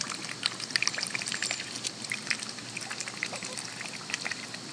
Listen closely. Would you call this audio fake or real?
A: real